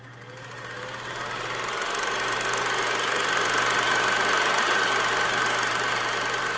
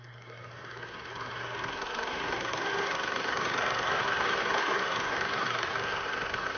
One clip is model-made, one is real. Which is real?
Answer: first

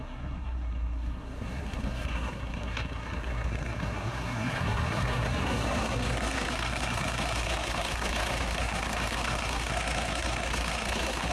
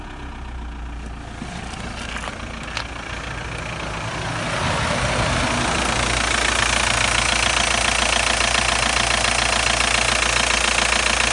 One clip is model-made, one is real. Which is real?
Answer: second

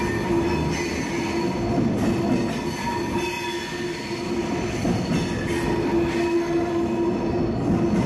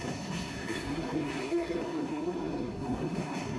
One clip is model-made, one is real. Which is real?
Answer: first